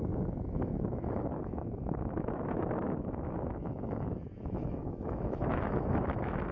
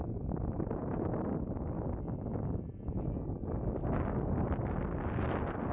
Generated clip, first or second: first